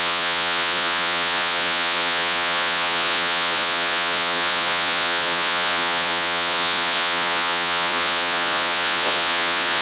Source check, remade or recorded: remade